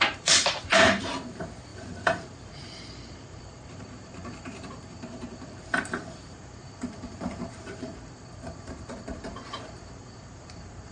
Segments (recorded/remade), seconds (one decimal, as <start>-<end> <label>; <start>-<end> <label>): 0.0-10.9 remade